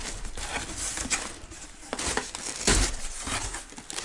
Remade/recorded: recorded